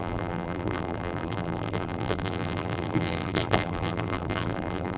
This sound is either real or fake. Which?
fake